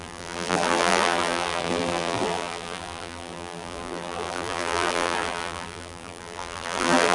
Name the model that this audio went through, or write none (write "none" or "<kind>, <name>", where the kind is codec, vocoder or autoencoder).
vocoder, BigVGAN v2